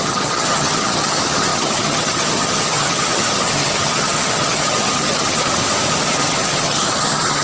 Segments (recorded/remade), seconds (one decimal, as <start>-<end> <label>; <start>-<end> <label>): 0.0-5.6 remade; 5.6-6.1 recorded; 6.1-7.4 remade